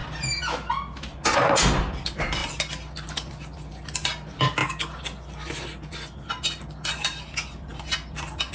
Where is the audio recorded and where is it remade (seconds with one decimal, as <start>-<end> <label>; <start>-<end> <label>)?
0.0-8.5 recorded